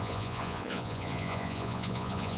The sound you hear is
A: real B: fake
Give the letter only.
B